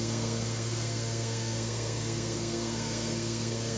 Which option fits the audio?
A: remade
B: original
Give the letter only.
A